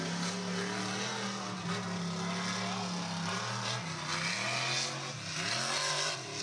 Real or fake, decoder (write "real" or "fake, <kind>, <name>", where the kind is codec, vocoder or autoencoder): real